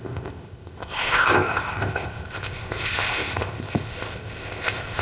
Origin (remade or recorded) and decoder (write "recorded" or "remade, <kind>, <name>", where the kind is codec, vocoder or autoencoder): remade, codec, ZipCodec